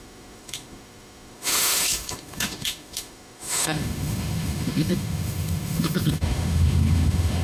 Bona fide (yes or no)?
no